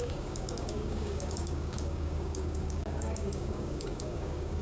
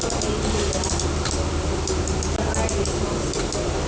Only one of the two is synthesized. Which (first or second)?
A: first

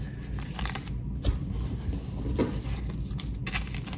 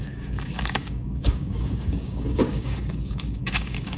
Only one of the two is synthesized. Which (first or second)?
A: second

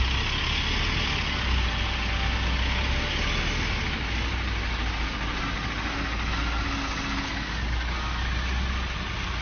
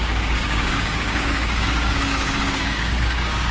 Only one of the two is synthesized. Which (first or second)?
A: second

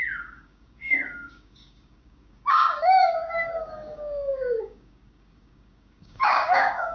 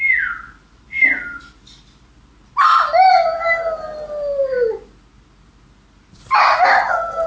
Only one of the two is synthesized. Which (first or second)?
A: first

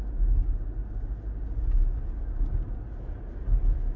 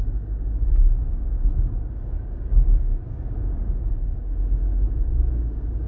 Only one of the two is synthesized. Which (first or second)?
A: second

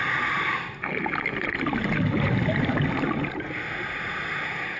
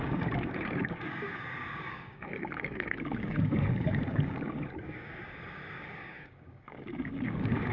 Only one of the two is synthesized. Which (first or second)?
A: second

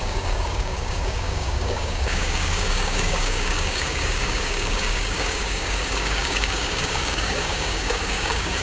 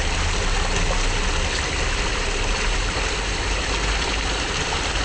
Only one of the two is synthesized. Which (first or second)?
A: first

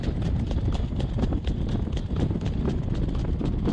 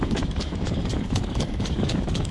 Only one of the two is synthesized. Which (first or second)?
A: second